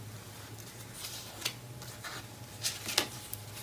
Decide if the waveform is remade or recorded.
recorded